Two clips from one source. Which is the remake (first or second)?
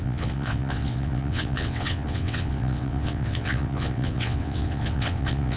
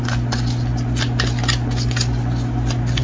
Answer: first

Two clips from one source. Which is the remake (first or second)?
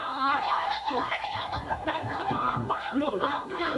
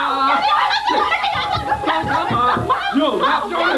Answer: first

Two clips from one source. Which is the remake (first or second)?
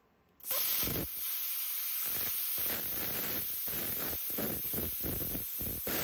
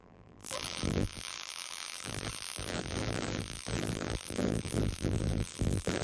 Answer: second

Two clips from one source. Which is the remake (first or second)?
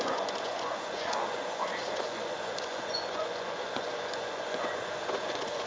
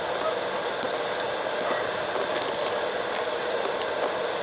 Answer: first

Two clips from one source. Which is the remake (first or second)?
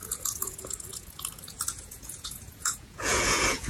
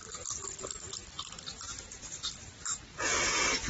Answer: first